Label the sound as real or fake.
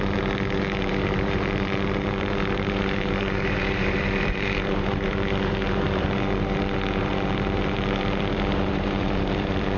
fake